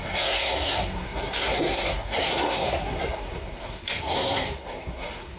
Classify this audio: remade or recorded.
remade